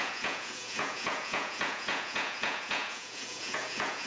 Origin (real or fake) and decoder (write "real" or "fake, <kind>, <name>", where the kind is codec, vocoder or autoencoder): fake, vocoder, Vocos